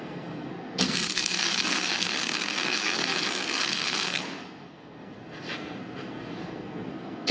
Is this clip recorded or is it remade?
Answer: remade